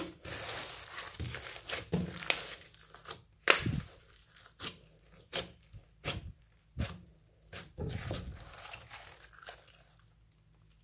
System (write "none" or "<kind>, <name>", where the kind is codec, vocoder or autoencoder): none